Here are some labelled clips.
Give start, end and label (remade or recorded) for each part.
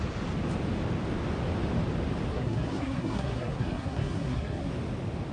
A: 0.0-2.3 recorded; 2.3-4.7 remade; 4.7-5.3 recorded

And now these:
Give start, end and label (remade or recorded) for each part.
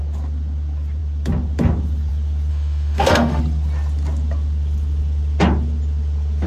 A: 0.0-2.5 recorded; 2.5-3.4 remade; 3.4-6.5 recorded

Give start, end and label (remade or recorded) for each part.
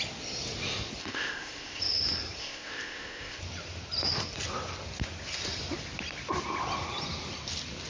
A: 0.0-1.0 recorded; 1.0-1.8 remade; 1.8-2.4 recorded; 2.4-3.4 remade; 3.4-7.9 recorded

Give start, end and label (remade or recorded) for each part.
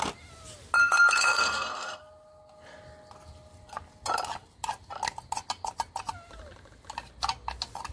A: 0.0-0.8 recorded; 0.8-2.0 remade; 2.0-7.9 recorded